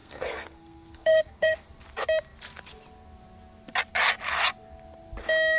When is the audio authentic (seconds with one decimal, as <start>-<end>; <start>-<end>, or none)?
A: 1.7-5.6